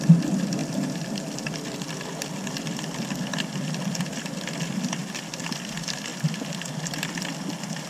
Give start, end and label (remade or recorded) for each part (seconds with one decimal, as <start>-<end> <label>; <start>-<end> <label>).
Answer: 0.0-0.6 recorded; 0.6-4.1 remade; 4.1-5.0 recorded; 5.0-5.6 remade; 5.6-7.9 recorded